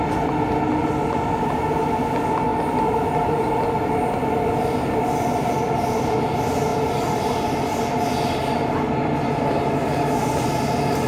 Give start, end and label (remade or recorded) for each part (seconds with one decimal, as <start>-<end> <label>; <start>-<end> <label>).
0.0-11.1 recorded